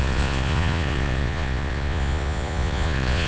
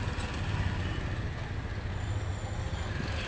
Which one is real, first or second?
second